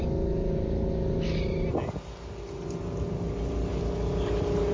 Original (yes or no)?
yes